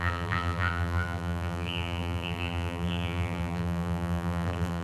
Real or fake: fake